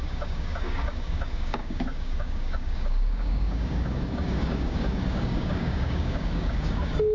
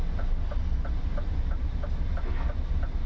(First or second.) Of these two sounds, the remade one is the first